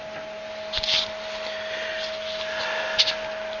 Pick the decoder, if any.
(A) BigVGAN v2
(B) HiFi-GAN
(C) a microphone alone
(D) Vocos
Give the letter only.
C